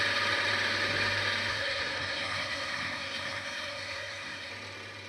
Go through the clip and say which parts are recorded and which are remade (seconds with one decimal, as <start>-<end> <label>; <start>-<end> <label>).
0.0-1.5 recorded; 1.5-4.5 remade; 4.5-5.1 recorded